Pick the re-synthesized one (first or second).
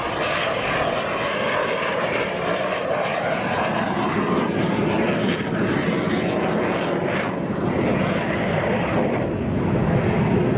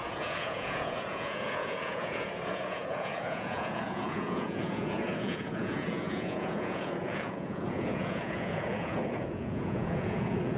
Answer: second